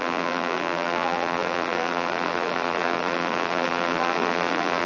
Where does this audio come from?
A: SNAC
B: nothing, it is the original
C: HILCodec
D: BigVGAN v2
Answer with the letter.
D